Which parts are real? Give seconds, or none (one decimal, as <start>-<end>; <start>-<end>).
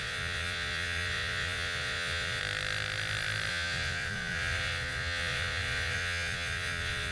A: 2.4-3.5